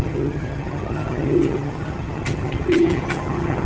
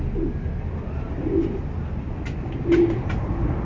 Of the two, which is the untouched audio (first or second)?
second